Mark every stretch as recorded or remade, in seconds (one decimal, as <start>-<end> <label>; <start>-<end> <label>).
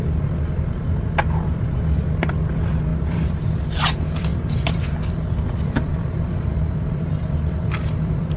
0.0-8.4 remade